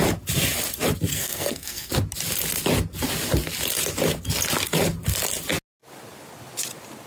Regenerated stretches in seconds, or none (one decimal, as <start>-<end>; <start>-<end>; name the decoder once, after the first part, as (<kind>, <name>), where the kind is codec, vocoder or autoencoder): 1.1-1.9 (codec, SNAC)